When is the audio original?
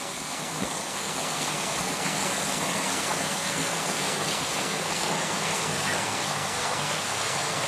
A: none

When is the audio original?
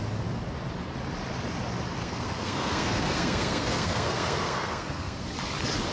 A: 0.0-2.0; 5.2-5.9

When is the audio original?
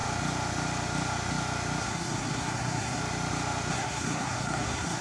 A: 0.0-1.8; 3.0-3.7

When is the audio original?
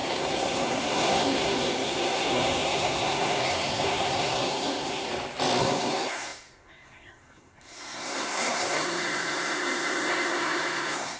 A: 5.1-5.6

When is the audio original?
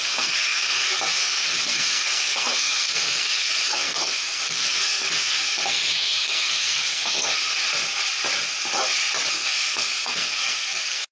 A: 7.5-9.3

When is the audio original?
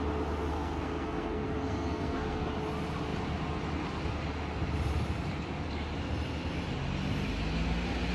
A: 0.0-0.5; 2.5-8.1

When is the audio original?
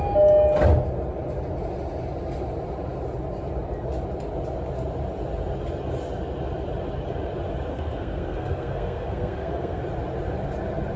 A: 0.0-7.7; 9.8-11.0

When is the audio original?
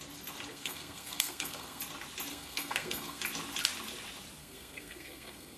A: 0.0-0.5; 1.8-2.3; 3.2-4.4